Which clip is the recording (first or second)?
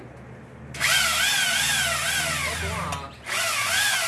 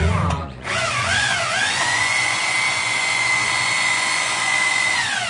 first